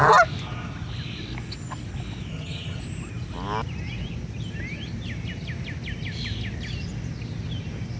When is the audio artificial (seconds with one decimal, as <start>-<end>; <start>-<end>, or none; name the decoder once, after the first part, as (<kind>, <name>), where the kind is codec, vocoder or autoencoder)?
2.3-2.8 (vocoder, HiFi-GAN)